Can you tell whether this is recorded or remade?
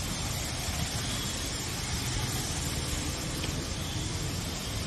recorded